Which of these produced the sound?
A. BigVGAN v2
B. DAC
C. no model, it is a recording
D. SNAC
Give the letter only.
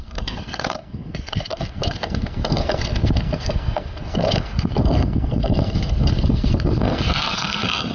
D